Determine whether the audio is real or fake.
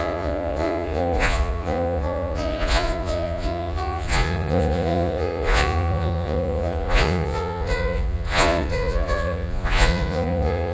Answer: fake